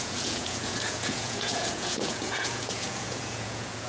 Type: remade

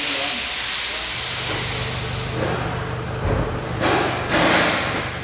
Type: recorded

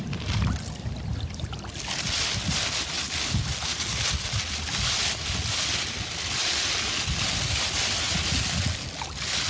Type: recorded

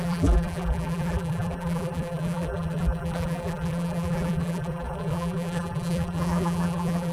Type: remade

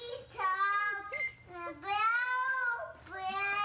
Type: recorded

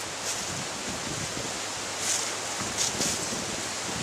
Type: recorded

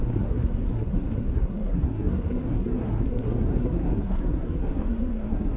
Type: remade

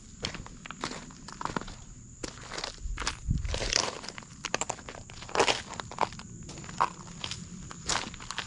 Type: recorded